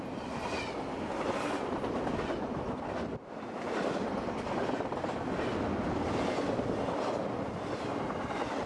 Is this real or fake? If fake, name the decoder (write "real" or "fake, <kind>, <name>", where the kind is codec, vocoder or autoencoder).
real